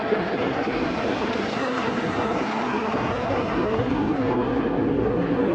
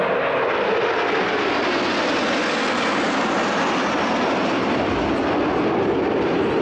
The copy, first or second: first